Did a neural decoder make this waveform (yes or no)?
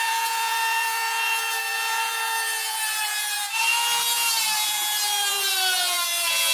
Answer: yes